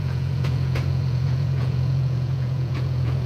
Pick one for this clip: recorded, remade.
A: remade